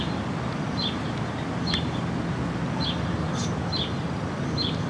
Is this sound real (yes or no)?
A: yes